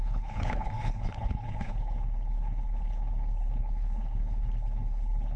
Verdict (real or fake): fake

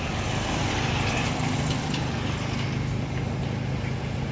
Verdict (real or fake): real